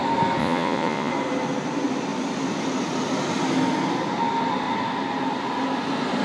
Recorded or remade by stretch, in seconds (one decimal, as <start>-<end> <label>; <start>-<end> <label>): 0.0-0.4 recorded; 0.4-1.1 remade; 1.1-6.2 recorded